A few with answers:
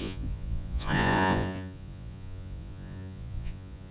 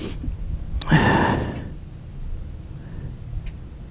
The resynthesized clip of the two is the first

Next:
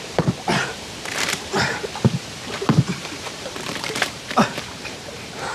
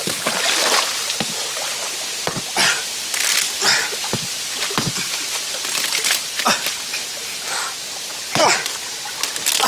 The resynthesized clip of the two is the first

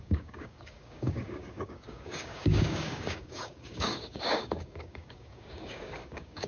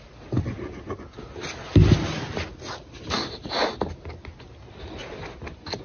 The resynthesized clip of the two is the first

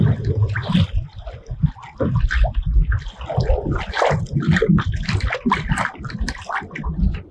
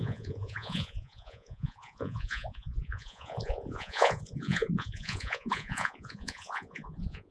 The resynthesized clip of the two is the second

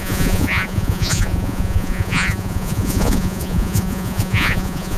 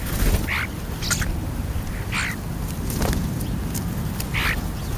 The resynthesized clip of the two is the first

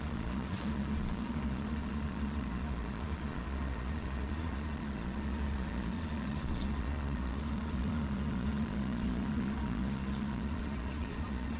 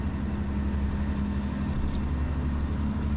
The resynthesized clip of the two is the first